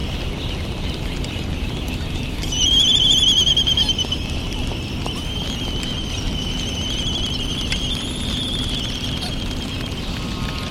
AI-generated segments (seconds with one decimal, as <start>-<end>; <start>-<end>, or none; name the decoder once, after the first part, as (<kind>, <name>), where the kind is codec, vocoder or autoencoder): 1.0-10.7 (vocoder, BigVGAN v2)